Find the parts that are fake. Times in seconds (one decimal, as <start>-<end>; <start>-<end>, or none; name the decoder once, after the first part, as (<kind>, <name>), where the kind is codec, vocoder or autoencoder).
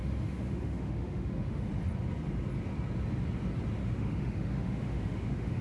0.0-1.7 (autoencoder, DAC-VAE); 3.8-5.6